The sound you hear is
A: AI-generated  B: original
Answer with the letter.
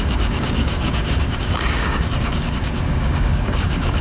A